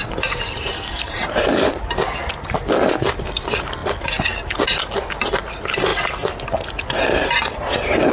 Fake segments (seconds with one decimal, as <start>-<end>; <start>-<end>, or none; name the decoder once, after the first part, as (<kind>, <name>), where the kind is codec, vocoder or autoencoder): 0.0-1.9 (vocoder, BigVGAN v2)